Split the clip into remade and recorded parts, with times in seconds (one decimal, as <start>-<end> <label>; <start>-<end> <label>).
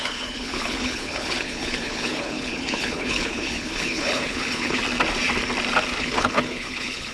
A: 0.0-4.8 remade; 4.8-6.0 recorded; 6.0-7.1 remade